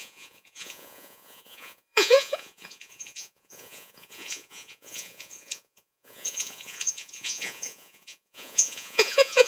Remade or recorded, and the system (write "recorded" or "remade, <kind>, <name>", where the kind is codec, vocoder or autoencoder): remade, vocoder, Vocos